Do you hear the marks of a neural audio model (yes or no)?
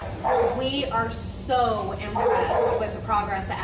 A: no